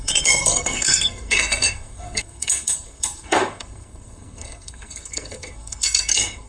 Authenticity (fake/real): fake